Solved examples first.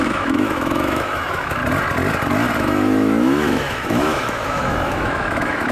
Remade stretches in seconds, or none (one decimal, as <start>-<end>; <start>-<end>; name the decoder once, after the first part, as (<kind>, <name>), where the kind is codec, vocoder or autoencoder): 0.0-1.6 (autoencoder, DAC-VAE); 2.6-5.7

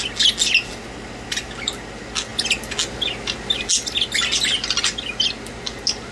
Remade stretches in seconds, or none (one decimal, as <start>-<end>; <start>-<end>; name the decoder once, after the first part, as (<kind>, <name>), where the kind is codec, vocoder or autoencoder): none

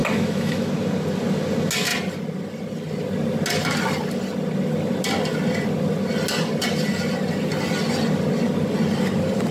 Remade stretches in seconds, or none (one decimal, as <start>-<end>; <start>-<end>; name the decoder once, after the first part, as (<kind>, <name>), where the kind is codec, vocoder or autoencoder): 0.0-0.7 (autoencoder, DAC-VAE)

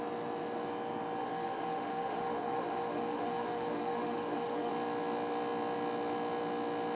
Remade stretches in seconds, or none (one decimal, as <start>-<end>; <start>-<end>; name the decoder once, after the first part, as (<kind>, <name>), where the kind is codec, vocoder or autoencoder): 1.2-4.7 (autoencoder, DAC-VAE)

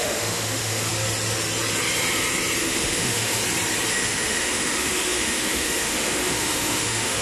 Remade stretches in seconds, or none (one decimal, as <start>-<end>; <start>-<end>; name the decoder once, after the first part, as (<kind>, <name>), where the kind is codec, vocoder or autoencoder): 0.0-0.9 (autoencoder, DAC-VAE); 2.6-3.4; 3.9-7.2

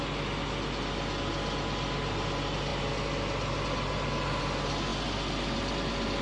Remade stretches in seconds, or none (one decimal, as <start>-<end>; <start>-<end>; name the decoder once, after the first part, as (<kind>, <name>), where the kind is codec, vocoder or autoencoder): none